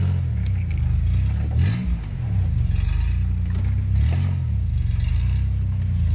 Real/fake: real